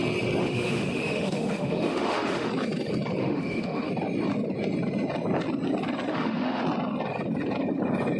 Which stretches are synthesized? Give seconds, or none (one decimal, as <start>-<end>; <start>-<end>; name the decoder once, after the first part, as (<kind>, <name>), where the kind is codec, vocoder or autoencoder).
0.4-2.5 (autoencoder, DAC-VAE); 3.2-3.9; 6.1-6.6